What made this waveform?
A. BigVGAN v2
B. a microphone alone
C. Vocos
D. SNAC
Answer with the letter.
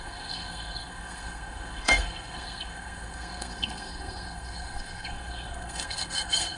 D